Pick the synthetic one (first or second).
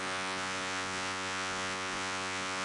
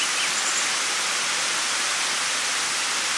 first